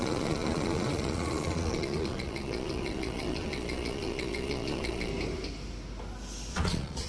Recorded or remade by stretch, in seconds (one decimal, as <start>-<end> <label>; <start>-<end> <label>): 0.0-5.1 remade; 5.1-6.5 recorded; 6.5-7.1 remade